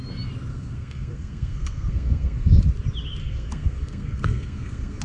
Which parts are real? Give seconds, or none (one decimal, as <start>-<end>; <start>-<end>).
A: 0.0-0.5; 2.6-3.2